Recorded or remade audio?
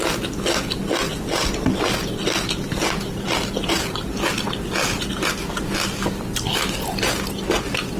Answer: recorded